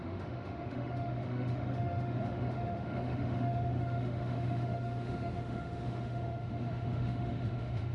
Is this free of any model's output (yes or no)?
no